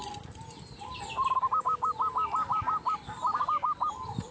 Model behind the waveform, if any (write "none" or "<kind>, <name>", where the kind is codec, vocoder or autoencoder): none